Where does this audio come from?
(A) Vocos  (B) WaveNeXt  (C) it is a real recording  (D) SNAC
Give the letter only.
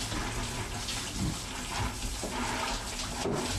C